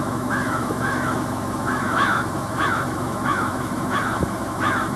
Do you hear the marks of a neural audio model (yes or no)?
yes